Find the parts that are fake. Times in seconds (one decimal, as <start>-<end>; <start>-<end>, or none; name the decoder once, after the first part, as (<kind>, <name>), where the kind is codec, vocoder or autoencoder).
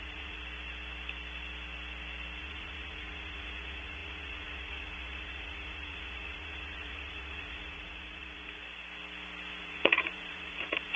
0.0-0.4 (vocoder, Vocos); 2.4-8.6; 9.6-11.0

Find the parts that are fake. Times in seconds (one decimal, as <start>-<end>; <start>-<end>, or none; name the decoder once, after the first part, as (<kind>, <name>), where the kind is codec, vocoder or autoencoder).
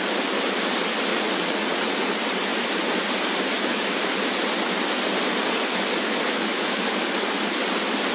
1.1-1.9 (vocoder, Vocos)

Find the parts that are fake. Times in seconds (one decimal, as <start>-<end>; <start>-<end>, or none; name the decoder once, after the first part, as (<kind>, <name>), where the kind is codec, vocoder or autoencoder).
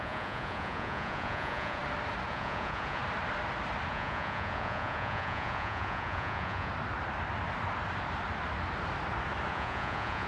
0.0-1.8 (vocoder, Vocos); 2.3-3.0; 3.9-6.7; 9.5-10.3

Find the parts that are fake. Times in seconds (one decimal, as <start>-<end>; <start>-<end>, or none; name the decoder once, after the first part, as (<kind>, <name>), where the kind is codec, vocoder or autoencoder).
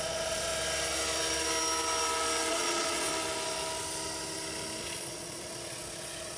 0.0-0.5 (vocoder, Vocos); 2.5-3.1; 4.8-6.4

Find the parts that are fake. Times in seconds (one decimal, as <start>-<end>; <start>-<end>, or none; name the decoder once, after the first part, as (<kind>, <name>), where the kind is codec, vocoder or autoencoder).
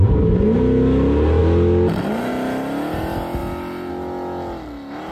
none